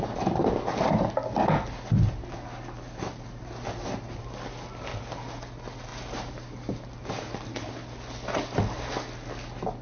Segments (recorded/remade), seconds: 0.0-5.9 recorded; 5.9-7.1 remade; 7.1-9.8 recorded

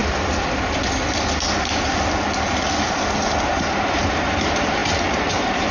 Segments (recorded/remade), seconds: 0.0-3.4 recorded; 3.4-5.7 remade

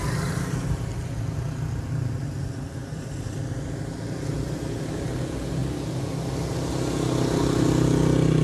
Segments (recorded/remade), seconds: 0.0-2.8 recorded; 2.8-3.3 remade; 3.3-8.4 recorded